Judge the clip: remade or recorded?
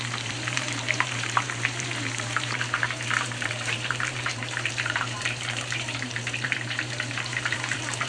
remade